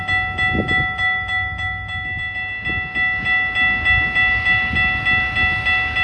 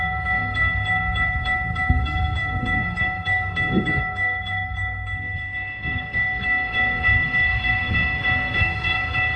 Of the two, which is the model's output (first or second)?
second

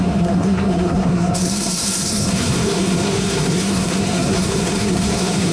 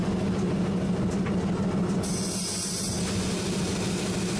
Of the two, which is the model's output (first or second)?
first